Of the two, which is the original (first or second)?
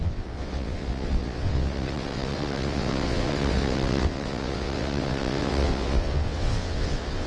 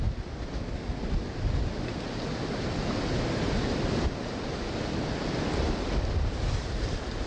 second